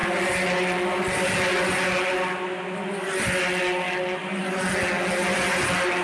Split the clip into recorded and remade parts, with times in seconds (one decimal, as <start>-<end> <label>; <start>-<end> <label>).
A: 0.0-6.0 recorded